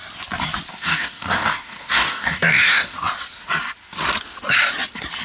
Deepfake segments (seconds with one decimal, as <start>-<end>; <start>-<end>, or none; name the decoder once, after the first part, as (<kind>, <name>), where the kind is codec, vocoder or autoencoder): 0.7-3.0 (codec, DAC)